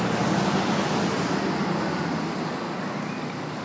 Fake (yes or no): no